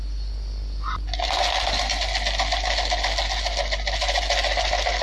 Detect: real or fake real